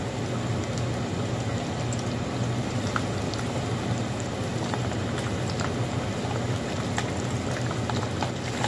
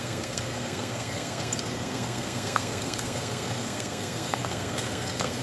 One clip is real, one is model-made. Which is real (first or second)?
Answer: first